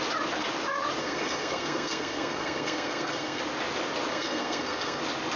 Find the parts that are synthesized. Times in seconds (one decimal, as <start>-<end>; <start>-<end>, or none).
1.0-3.4; 4.1-5.0